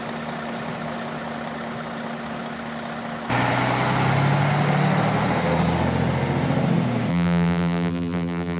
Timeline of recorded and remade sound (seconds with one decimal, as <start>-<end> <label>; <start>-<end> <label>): 0.0-7.1 recorded; 7.1-8.6 remade